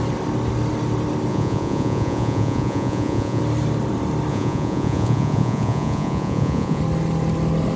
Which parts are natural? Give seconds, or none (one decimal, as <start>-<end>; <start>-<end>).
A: 0.0-1.3; 3.4-4.3; 6.8-7.8